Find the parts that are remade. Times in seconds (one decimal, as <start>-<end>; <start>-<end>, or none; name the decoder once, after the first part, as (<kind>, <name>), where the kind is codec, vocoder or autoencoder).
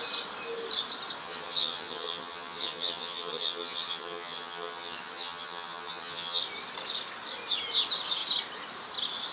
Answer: 1.2-6.4 (vocoder, HiFi-GAN)